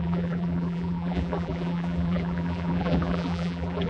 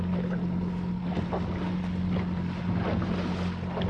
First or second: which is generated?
first